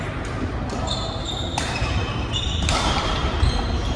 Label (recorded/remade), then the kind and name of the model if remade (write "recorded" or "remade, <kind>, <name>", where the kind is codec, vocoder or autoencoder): remade, vocoder, BigVGAN v2